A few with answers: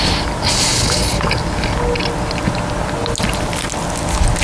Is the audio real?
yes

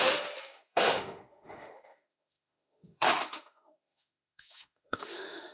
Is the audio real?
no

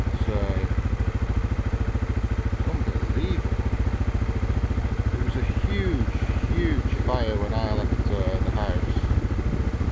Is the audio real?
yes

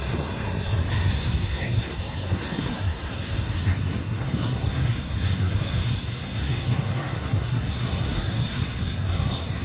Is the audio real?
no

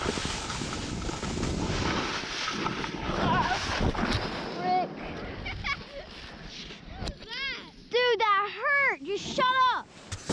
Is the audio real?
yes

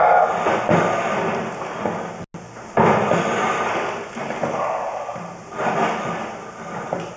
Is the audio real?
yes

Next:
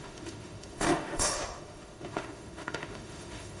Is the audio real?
no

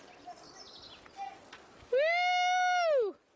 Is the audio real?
yes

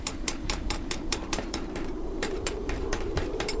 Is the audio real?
no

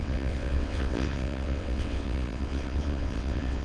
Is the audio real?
no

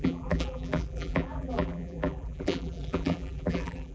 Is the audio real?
no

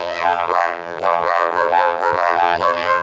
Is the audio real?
no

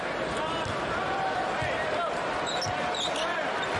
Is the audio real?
yes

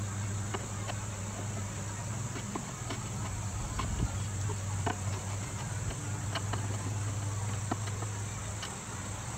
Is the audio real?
yes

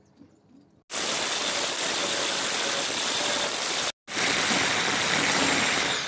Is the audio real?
yes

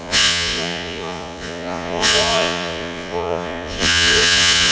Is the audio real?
no